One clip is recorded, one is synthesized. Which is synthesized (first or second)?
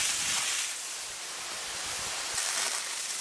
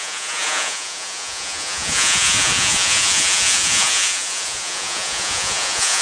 second